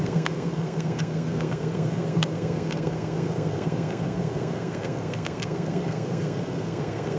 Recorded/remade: remade